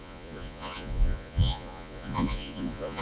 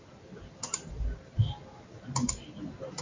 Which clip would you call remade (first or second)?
first